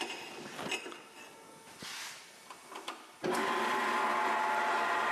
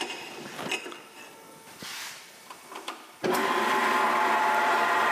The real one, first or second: first